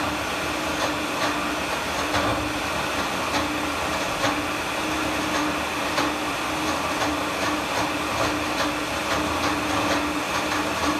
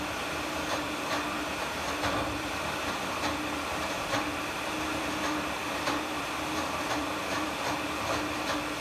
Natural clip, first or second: first